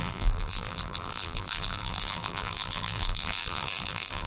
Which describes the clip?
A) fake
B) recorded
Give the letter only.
A